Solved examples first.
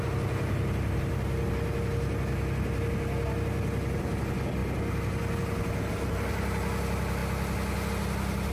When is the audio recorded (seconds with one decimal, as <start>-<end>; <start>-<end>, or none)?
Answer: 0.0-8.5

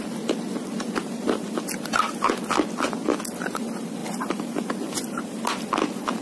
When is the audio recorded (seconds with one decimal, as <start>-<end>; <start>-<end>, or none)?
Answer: 0.0-4.0; 5.2-6.2

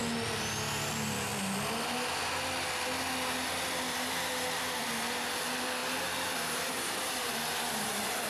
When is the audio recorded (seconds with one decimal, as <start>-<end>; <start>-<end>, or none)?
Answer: 0.0-0.9; 1.3-4.8